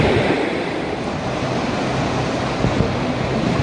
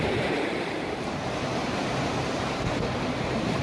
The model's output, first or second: second